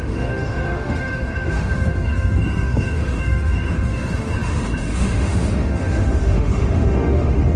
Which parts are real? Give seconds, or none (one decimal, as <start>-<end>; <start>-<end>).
none